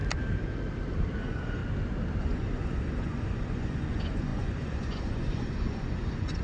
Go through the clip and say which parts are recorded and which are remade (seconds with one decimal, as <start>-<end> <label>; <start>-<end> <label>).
0.0-1.2 recorded; 1.2-1.6 remade; 1.6-2.2 recorded; 2.2-6.4 remade